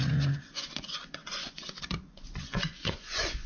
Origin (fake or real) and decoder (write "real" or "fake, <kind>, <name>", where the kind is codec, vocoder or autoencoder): fake, vocoder, Vocos